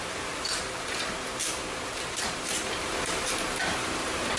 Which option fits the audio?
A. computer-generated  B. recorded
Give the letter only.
B